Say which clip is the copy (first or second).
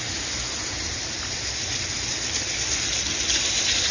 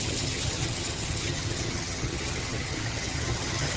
second